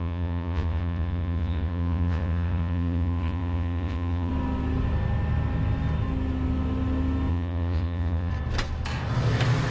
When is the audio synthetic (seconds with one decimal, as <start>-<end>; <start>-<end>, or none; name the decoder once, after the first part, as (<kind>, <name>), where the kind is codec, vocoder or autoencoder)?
0.0-4.3 (vocoder, Vocos); 7.3-8.3